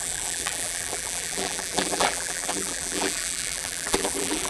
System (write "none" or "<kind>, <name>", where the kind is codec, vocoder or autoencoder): vocoder, BigVGAN v2